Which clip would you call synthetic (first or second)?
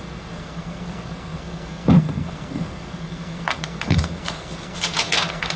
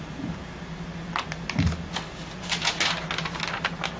first